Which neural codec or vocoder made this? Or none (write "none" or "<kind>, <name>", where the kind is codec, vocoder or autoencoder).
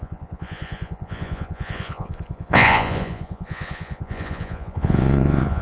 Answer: vocoder, Vocos